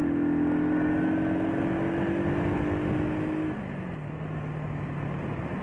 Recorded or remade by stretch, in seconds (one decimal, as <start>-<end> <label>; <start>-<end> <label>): 0.0-5.6 recorded